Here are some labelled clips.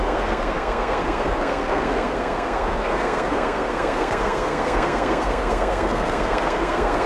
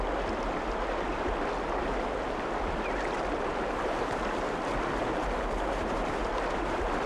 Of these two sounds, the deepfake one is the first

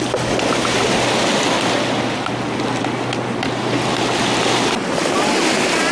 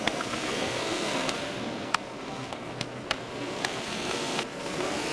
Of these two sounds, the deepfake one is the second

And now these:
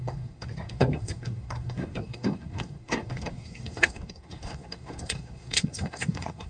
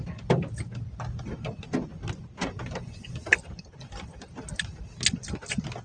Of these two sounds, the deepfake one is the first